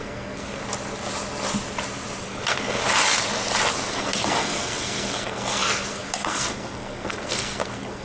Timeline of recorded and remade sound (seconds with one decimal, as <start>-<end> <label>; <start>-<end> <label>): 0.0-0.6 remade; 0.6-2.2 recorded; 2.2-2.8 remade; 2.8-3.9 recorded; 3.9-8.0 remade